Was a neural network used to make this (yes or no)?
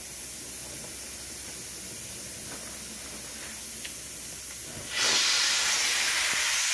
no